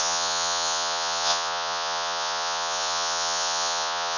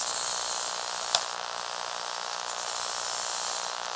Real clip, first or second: second